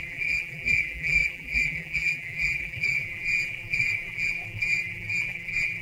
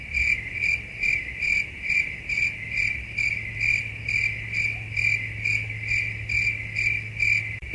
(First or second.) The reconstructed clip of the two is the first